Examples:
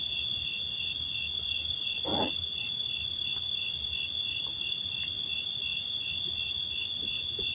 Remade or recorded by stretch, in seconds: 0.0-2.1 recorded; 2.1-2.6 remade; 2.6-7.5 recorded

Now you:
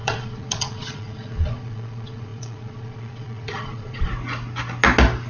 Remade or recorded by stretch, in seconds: 0.0-4.1 remade; 4.1-5.3 recorded

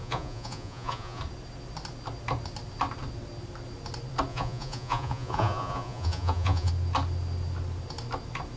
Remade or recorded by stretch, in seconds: 0.0-1.2 remade; 1.2-4.3 recorded; 4.3-6.7 remade; 6.7-8.6 recorded

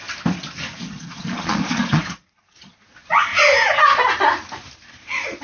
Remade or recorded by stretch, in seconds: 0.0-0.8 recorded; 0.8-3.3 remade; 3.3-4.9 recorded; 4.9-5.4 remade

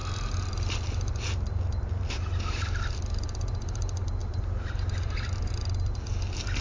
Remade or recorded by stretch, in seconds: 0.0-6.6 recorded

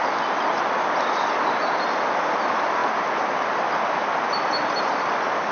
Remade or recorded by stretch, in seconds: 0.0-5.5 recorded